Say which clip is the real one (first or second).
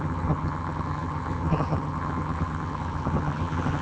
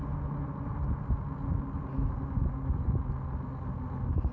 second